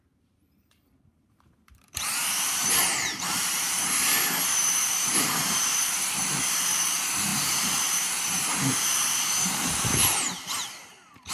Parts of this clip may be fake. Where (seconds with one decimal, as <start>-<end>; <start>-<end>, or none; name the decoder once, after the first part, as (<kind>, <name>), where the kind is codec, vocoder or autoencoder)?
0.0-11.3 (vocoder, BigVGAN v2)